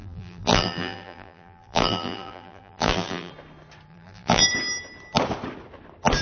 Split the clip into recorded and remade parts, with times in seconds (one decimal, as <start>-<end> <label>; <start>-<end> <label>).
0.0-3.3 remade; 3.3-3.9 recorded; 3.9-4.4 remade; 4.4-6.2 recorded